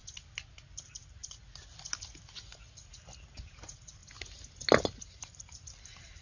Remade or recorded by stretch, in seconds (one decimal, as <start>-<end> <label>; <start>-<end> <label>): 0.0-0.7 recorded; 0.7-1.2 remade; 1.2-3.4 recorded; 3.4-4.0 remade; 4.0-5.0 recorded; 5.0-6.2 remade